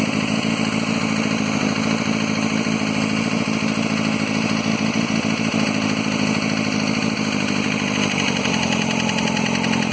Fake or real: real